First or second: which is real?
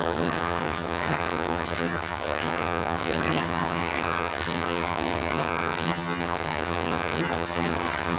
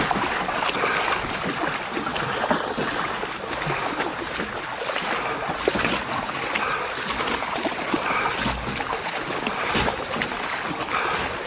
second